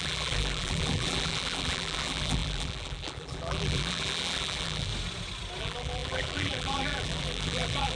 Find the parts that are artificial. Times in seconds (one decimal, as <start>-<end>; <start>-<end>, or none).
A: 0.0-4.9; 5.6-8.0